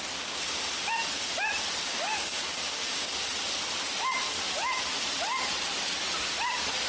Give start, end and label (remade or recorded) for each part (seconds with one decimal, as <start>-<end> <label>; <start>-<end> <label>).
0.0-1.9 recorded; 1.9-3.1 remade; 3.1-6.9 recorded